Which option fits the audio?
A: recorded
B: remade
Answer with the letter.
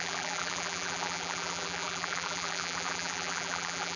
B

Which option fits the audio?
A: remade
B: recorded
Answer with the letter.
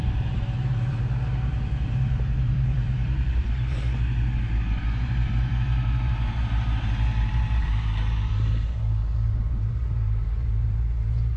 A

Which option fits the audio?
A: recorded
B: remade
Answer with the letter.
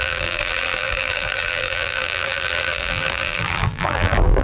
B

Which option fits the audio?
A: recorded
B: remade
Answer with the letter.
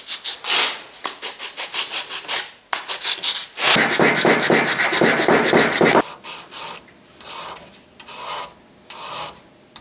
A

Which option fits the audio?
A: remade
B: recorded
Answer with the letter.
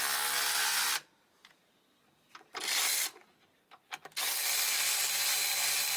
A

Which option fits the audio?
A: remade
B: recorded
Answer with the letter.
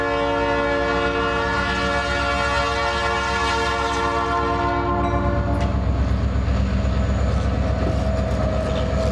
B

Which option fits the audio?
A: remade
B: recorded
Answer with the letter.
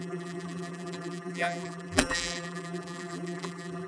A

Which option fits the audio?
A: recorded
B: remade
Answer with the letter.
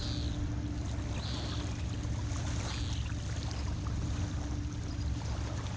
A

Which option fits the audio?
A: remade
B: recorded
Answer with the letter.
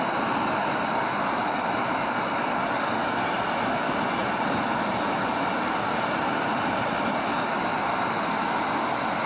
B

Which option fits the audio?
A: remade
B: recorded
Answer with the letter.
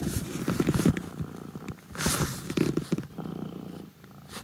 B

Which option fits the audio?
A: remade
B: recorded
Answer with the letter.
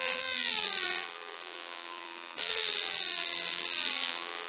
A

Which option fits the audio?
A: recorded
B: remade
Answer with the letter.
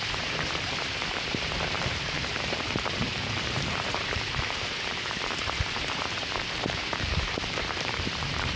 B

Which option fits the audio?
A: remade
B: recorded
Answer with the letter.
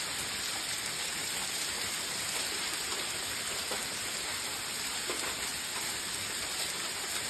A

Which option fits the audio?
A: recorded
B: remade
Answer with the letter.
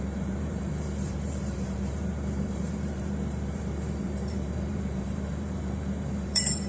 B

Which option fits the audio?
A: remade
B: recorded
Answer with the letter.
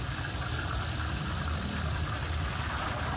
A